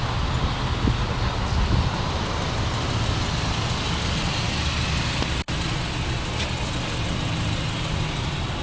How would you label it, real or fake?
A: real